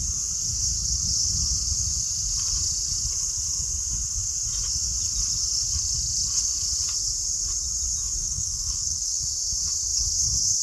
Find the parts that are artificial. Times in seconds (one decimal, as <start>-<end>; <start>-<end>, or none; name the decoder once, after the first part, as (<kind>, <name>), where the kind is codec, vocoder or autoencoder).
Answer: 8.2-9.2 (codec, SNAC)